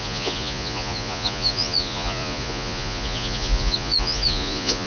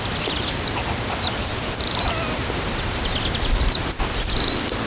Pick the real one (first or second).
second